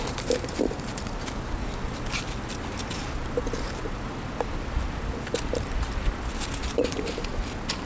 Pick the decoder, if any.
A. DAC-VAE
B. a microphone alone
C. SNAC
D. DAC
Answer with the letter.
B